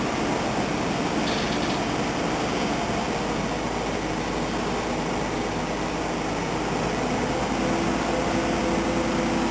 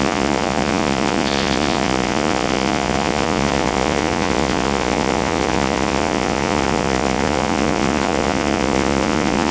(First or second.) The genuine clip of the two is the first